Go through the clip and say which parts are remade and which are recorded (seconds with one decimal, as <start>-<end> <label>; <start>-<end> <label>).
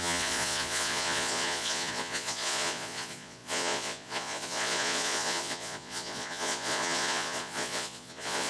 0.0-8.5 remade